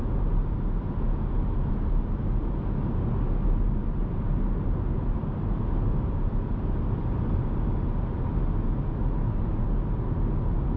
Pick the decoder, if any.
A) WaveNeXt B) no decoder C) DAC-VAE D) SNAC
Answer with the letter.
B